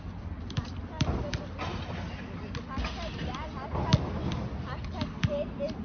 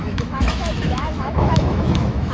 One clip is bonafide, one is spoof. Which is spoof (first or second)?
second